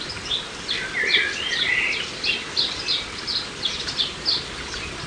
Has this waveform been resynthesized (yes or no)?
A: no